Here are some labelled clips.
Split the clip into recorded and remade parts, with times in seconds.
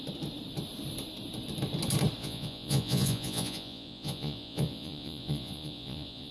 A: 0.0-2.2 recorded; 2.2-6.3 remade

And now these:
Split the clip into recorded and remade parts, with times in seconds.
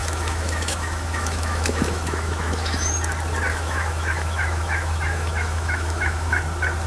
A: 0.0-2.9 remade; 2.9-3.5 recorded; 3.5-6.4 remade; 6.4-6.9 recorded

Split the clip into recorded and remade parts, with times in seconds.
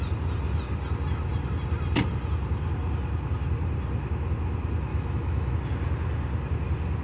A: 0.0-4.9 recorded; 4.9-5.5 remade; 5.5-7.0 recorded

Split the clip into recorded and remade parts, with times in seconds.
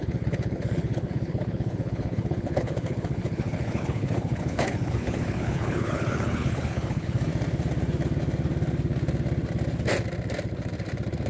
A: 0.0-7.3 remade; 7.3-11.3 recorded